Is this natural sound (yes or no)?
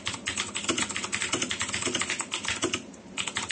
yes